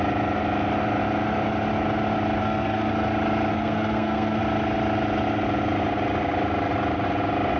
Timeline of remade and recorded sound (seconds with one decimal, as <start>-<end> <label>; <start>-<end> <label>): 0.0-2.4 recorded; 2.4-2.9 remade; 2.9-3.5 recorded; 3.5-4.4 remade; 4.4-7.6 recorded

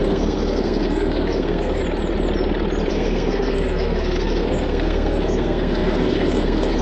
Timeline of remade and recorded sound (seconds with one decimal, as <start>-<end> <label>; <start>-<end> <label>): 0.0-1.8 remade; 1.8-2.9 recorded; 2.9-6.8 remade

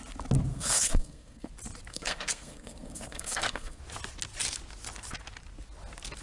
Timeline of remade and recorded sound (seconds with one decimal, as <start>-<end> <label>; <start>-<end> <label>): 0.0-0.5 recorded; 0.5-1.5 remade; 1.5-1.9 recorded; 1.9-3.8 remade; 3.8-6.2 recorded

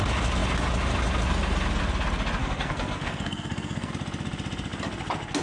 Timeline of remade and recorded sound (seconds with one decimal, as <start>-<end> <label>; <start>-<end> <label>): 0.0-2.4 recorded; 2.4-3.9 remade; 3.9-5.4 recorded

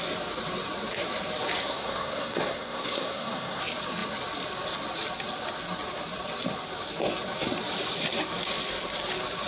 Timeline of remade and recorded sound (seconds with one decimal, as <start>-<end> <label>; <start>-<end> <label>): 0.0-1.6 recorded; 1.6-3.6 remade; 3.6-9.5 recorded